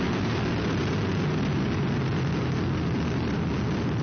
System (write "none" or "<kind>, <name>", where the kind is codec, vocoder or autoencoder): none